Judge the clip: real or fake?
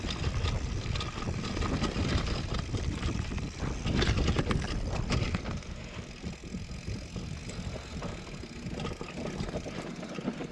real